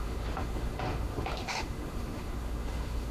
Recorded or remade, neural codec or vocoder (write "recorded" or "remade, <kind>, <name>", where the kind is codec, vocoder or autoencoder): remade, autoencoder, DAC-VAE